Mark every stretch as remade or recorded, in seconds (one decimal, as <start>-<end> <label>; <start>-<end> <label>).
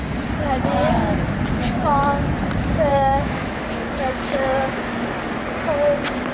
0.0-2.9 recorded; 2.9-3.6 remade; 3.6-6.3 recorded